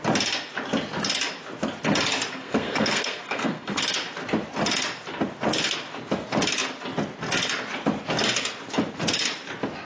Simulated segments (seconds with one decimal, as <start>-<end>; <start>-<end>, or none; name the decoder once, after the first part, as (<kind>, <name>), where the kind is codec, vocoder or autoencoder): 2.3-3.8 (codec, SNAC)